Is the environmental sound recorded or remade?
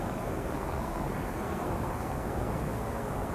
remade